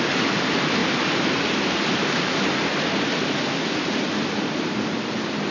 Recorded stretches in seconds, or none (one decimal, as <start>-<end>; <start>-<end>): 0.0-5.5